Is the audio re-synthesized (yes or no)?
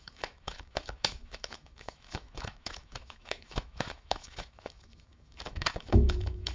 yes